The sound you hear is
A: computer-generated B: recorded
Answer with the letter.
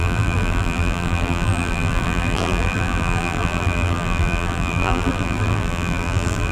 A